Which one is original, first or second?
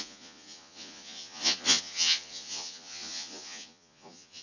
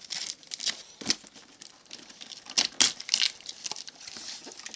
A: second